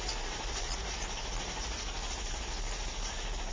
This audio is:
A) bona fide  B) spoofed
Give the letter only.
A